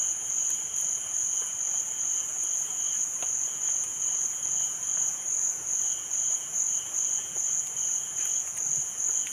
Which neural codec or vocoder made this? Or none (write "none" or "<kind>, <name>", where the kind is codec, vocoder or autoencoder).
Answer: vocoder, Vocos